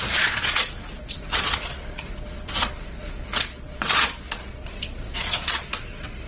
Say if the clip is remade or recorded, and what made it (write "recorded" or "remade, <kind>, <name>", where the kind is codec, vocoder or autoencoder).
remade, vocoder, Vocos